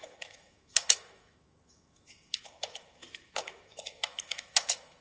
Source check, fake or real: fake